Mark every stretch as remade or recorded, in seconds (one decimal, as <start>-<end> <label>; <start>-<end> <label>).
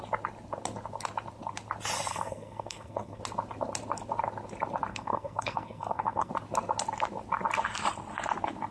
0.0-2.1 recorded; 2.1-3.2 remade; 3.2-4.9 recorded; 4.9-6.3 remade; 6.3-8.7 recorded